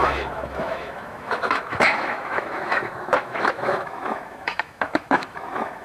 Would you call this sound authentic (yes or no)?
no